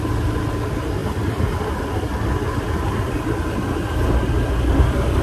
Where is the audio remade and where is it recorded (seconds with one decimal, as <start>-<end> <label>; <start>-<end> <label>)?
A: 0.0-5.2 recorded

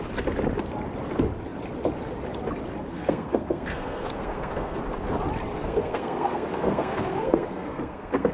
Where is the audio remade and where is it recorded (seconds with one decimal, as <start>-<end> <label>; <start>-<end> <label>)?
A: 0.0-2.9 recorded; 2.9-4.8 remade; 4.8-5.6 recorded; 5.6-8.3 remade

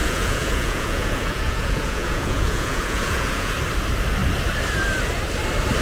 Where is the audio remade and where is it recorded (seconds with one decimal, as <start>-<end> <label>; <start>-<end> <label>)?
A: 0.0-3.5 remade; 3.5-5.8 recorded

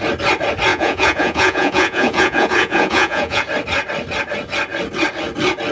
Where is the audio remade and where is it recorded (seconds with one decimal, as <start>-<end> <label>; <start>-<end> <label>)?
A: 0.0-0.7 recorded; 0.7-3.4 remade; 3.4-5.7 recorded